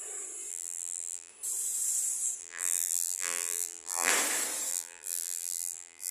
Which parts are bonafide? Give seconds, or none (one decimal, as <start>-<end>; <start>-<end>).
0.0-0.5; 1.3-2.4; 4.1-4.7